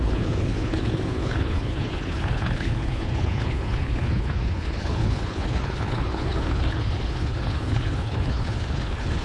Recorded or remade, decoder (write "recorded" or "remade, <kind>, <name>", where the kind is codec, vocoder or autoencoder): remade, codec, HILCodec